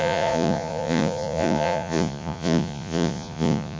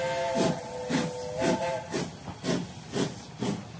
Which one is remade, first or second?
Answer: first